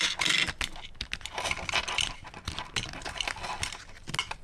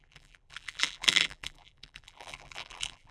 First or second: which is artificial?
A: second